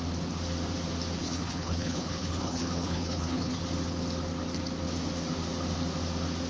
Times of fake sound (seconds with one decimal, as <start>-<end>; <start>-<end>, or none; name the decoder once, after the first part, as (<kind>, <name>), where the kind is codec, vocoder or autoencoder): 1.2-3.6 (codec, HILCodec)